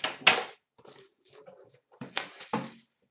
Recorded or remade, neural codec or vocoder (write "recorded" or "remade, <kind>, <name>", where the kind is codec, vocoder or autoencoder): recorded